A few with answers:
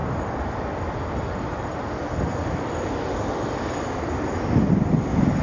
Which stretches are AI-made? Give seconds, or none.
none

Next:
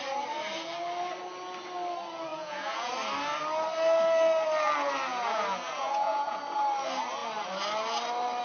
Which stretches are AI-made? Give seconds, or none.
2.3-2.9 (vocoder, Vocos); 5.1-6.4